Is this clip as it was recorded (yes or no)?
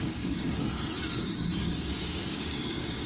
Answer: no